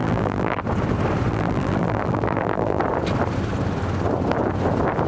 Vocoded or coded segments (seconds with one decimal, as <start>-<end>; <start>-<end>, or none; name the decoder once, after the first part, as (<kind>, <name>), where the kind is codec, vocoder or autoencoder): 0.0-0.6 (vocoder, BigVGAN v2); 1.3-2.8